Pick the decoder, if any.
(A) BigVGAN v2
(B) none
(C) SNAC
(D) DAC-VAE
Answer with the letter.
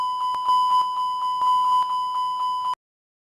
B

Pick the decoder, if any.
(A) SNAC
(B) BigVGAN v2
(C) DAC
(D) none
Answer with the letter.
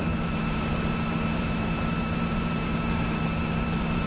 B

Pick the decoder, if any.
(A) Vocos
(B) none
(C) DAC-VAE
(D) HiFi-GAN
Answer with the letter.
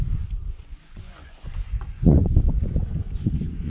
A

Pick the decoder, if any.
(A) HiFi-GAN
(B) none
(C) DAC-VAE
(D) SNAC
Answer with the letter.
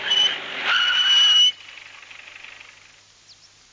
B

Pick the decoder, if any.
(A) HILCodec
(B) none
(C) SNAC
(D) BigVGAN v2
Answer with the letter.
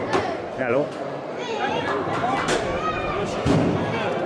D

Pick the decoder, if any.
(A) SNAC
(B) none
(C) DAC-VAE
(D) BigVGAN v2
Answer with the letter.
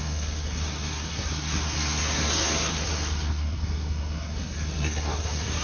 A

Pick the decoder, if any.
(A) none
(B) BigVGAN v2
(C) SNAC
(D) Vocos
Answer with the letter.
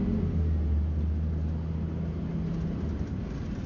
A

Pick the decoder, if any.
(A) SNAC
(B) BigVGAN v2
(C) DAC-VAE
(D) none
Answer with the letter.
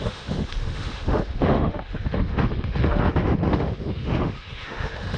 C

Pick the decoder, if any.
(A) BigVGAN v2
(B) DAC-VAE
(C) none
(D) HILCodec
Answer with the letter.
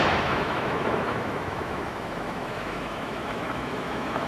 B